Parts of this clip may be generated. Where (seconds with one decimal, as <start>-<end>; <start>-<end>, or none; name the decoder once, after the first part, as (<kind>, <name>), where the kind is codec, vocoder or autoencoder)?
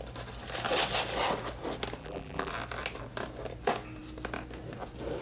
2.0-2.5 (vocoder, BigVGAN v2)